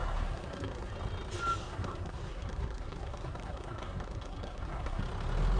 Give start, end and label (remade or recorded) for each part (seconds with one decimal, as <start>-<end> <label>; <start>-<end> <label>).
0.0-0.9 remade; 0.9-1.6 recorded; 1.6-5.0 remade; 5.0-5.6 recorded